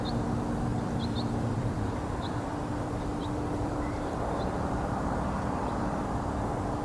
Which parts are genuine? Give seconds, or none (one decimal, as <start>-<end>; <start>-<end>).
0.0-0.7; 4.8-6.8